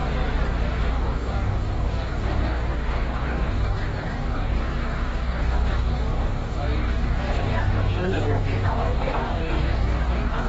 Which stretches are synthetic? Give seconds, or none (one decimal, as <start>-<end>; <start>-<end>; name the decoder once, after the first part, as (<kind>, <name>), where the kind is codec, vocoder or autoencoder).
0.9-10.5 (codec, DAC)

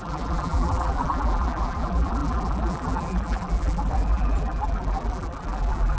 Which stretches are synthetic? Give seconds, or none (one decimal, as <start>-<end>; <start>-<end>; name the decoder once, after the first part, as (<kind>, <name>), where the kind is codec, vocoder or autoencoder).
0.0-6.0 (vocoder, BigVGAN v2)

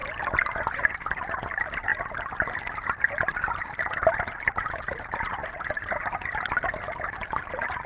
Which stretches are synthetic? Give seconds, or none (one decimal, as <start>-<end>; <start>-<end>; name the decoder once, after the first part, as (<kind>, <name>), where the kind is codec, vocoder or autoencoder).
none

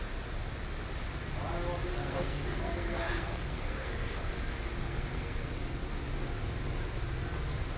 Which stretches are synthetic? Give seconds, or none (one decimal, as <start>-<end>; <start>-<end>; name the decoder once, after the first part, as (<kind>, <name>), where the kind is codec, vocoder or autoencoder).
1.9-4.3 (codec, SNAC); 4.8-5.5

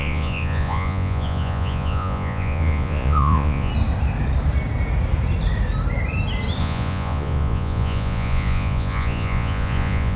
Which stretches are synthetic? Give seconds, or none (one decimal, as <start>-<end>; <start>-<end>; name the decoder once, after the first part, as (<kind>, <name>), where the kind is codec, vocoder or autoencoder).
0.0-3.7 (vocoder, Vocos); 6.6-10.2

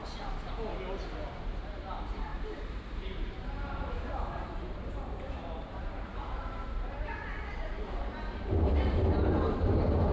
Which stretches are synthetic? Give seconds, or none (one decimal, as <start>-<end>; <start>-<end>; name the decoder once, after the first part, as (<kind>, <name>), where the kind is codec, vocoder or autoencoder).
1.4-7.3 (vocoder, BigVGAN v2); 8.0-10.1